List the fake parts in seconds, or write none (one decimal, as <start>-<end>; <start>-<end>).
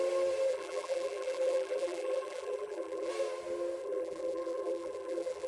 0.5-3.1; 3.8-5.5